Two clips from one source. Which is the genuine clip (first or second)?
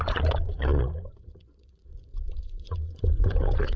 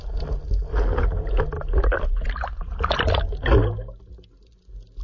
second